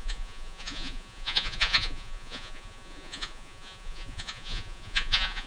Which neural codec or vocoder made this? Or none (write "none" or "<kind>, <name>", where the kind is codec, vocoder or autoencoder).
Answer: vocoder, Vocos